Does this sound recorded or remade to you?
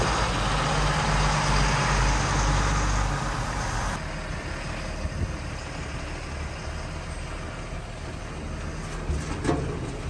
recorded